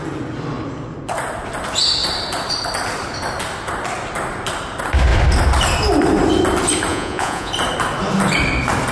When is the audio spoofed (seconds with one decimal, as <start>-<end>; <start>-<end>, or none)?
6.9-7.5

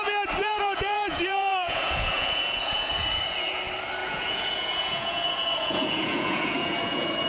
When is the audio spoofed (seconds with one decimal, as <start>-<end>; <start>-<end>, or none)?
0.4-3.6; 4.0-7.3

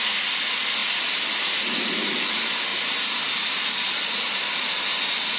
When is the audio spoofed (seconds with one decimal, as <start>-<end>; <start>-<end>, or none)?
none